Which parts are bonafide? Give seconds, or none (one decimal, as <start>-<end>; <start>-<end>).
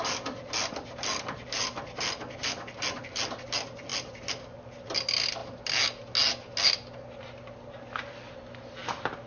0.0-9.3